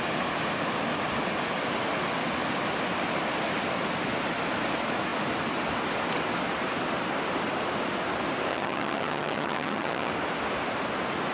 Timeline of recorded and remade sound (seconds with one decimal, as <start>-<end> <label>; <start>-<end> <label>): 0.0-8.5 recorded; 8.5-10.1 remade; 10.1-11.3 recorded